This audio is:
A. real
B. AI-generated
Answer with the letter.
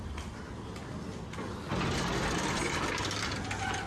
A